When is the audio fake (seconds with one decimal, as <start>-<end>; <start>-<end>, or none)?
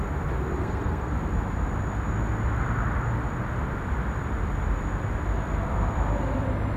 0.6-1.1